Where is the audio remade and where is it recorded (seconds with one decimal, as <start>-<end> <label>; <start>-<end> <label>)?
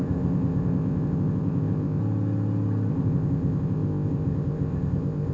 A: 0.0-2.0 remade; 2.0-2.9 recorded; 2.9-5.3 remade